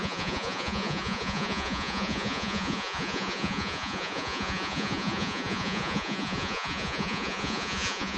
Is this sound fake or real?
fake